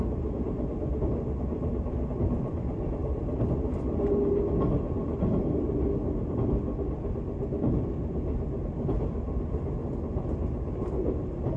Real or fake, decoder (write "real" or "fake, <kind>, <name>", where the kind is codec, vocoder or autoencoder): real